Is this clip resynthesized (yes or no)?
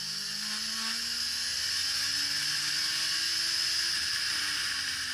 no